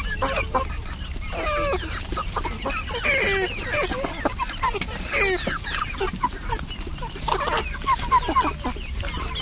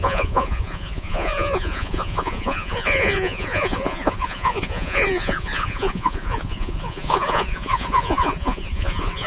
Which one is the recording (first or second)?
first